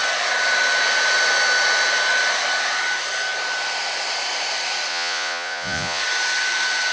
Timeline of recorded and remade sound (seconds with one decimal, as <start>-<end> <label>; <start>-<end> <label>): 0.0-4.9 recorded; 4.9-6.0 remade; 6.0-6.9 recorded